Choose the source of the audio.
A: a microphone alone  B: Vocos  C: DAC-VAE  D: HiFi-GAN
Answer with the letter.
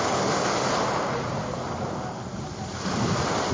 A